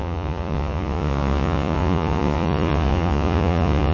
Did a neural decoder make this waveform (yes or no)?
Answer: yes